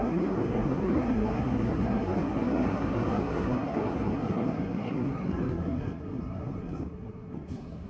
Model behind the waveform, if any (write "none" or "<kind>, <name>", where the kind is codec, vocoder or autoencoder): codec, SNAC